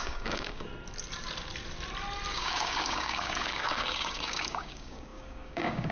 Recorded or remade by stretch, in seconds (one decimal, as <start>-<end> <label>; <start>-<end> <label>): 0.0-0.7 remade; 0.7-2.3 recorded; 2.3-5.9 remade

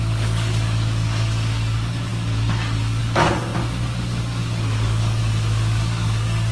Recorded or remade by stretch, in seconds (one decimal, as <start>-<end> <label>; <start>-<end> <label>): 0.0-6.5 remade

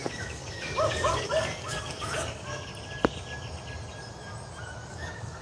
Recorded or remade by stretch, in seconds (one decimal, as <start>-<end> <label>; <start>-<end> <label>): 0.0-2.7 remade; 2.7-4.9 recorded; 4.9-5.4 remade